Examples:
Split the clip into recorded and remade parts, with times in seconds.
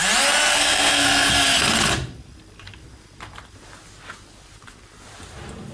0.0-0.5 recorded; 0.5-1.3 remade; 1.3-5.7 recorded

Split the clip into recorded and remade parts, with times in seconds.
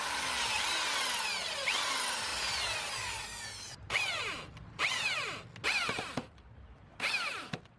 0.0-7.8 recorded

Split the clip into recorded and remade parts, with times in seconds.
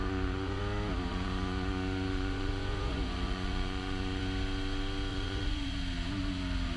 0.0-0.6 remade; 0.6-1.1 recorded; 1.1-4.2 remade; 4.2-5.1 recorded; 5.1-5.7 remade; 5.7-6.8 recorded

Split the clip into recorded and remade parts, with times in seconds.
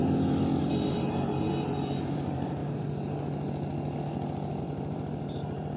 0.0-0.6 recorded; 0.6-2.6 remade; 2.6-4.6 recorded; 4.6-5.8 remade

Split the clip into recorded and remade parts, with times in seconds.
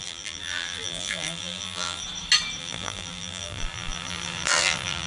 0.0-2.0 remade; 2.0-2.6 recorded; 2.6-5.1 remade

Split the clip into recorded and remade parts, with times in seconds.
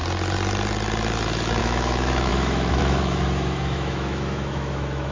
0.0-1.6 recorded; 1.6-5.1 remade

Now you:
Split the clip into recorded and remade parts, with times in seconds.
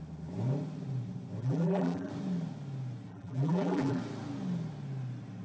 0.0-1.4 recorded; 1.4-2.1 remade; 2.1-3.1 recorded; 3.1-4.0 remade; 4.0-5.4 recorded